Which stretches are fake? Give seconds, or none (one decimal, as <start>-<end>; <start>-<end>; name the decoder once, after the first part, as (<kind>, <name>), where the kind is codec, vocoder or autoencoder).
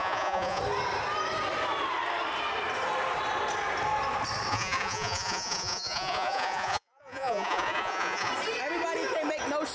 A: 0.0-0.6 (vocoder, Vocos); 4.5-8.3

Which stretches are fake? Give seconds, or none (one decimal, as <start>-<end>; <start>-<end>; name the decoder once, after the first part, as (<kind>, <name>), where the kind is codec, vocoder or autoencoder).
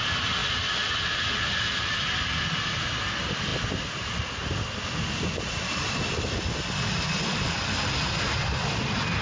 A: none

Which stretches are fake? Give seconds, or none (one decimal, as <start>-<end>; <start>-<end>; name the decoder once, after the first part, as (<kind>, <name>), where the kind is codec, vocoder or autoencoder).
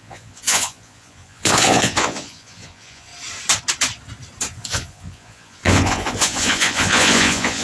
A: 0.0-3.1 (vocoder, Vocos); 4.5-7.6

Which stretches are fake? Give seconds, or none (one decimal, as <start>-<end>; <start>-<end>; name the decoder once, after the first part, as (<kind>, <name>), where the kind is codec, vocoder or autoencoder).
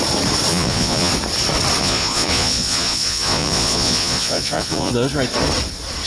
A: 0.5-1.1 (vocoder, Vocos); 1.8-4.9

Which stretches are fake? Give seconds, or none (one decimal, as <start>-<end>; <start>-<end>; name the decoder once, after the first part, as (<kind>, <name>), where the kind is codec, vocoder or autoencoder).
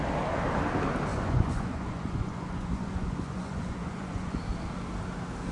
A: 1.1-4.4 (vocoder, Vocos)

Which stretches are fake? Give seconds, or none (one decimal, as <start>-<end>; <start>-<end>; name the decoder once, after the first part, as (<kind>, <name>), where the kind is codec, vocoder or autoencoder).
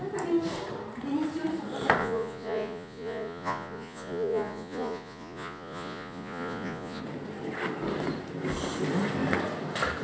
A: 2.0-7.0 (vocoder, Vocos)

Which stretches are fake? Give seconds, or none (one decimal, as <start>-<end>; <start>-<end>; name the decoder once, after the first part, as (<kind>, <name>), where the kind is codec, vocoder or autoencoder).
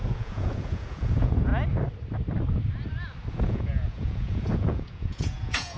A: 0.0-1.5 (vocoder, Vocos); 3.3-5.8